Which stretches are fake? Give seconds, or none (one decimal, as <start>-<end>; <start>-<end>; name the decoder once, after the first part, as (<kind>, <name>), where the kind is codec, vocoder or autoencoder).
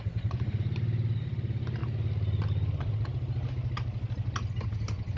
none